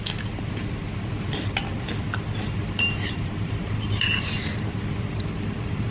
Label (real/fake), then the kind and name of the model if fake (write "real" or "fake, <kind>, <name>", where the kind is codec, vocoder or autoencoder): fake, vocoder, BigVGAN v2